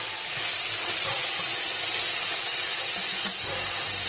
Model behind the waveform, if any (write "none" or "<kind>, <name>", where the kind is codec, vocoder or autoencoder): none